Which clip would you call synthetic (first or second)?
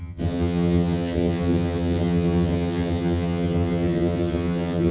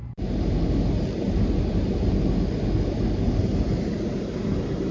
first